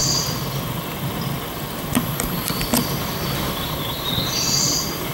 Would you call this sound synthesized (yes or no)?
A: no